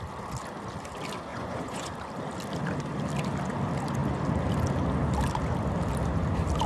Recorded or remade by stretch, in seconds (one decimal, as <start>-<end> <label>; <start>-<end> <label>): 0.0-1.3 recorded; 1.3-1.9 remade; 1.9-6.7 recorded